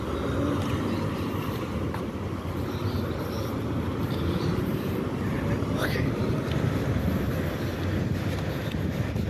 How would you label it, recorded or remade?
recorded